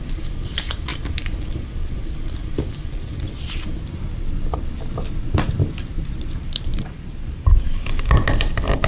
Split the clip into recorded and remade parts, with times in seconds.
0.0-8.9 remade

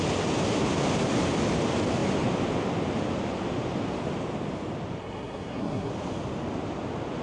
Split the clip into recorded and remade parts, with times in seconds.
0.0-5.0 recorded; 5.0-5.9 remade; 5.9-7.2 recorded

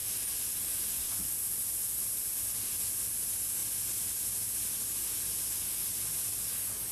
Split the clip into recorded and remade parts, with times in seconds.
0.0-6.9 recorded

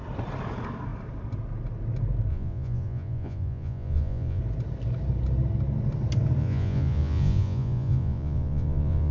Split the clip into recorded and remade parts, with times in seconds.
0.0-2.3 recorded; 2.3-4.4 remade; 4.4-6.4 recorded; 6.4-9.1 remade